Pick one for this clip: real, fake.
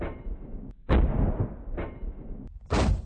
real